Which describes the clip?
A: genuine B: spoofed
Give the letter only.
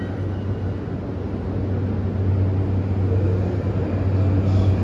A